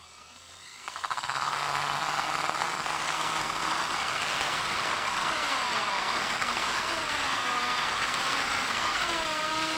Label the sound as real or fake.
fake